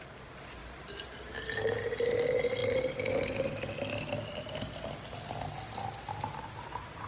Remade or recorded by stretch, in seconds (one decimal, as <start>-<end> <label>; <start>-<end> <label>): 0.0-7.1 recorded